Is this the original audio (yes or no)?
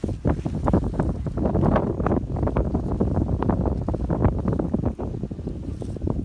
yes